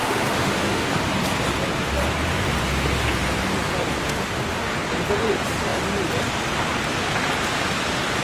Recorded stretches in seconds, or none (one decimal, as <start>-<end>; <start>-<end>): 0.9-4.0; 4.7-8.2